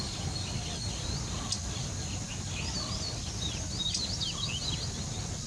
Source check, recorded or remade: recorded